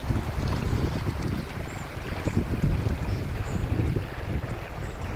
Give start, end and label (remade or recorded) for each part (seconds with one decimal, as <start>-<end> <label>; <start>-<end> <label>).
0.0-3.1 recorded; 3.1-3.6 remade; 3.6-5.2 recorded